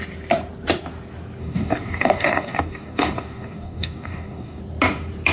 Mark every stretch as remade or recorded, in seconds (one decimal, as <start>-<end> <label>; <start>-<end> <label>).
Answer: 0.0-1.4 recorded; 1.4-4.6 remade; 4.6-5.3 recorded